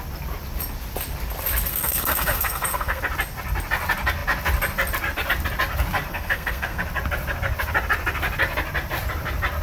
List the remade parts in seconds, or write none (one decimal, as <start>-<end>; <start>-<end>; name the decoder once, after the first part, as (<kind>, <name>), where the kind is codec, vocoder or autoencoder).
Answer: 1.7-3.0 (codec, SNAC); 6.1-6.8